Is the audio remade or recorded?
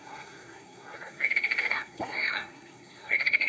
remade